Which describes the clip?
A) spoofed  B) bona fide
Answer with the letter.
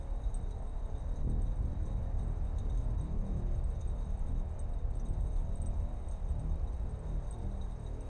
B